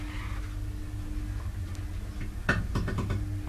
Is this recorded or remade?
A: recorded